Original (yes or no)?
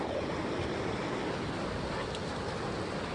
yes